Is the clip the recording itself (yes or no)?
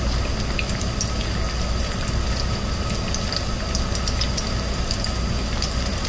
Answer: yes